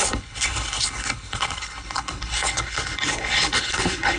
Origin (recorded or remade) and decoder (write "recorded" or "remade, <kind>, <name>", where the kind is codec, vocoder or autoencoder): remade, codec, HILCodec